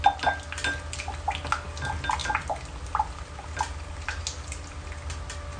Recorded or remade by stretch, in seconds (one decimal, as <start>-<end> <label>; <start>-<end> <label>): 0.0-5.6 recorded